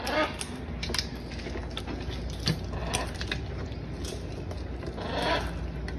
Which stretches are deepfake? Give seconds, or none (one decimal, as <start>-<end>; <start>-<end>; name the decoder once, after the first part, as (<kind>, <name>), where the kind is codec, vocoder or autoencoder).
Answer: none